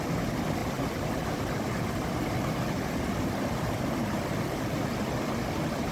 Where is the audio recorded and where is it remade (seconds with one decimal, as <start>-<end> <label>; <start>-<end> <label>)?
0.0-5.9 recorded